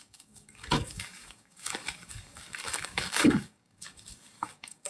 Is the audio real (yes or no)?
no